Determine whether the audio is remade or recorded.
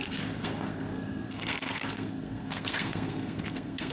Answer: remade